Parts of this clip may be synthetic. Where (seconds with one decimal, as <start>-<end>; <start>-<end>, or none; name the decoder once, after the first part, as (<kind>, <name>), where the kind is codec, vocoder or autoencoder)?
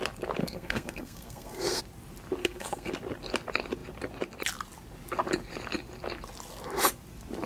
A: 0.4-1.8 (codec, SNAC); 2.4-2.9